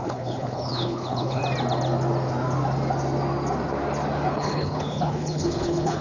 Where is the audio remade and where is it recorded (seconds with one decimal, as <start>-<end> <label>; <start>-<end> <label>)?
0.0-1.4 remade; 1.4-4.3 recorded; 4.3-6.0 remade

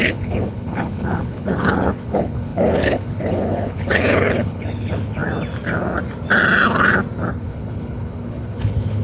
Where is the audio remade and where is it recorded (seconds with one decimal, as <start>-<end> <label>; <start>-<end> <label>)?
0.0-5.2 remade; 5.2-7.3 recorded; 7.3-9.0 remade